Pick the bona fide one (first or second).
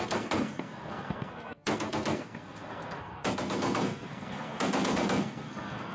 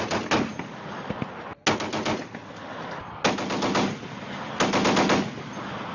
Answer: second